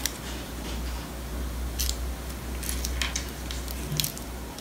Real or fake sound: real